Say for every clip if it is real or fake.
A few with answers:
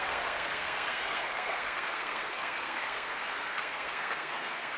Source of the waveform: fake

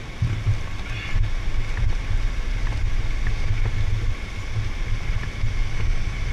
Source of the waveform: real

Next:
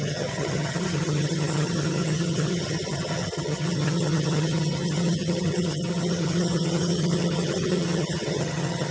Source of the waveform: fake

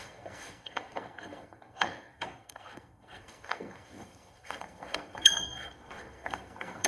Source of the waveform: fake